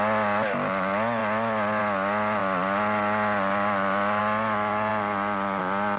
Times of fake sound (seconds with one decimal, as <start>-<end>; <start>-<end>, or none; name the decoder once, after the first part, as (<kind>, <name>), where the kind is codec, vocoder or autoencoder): none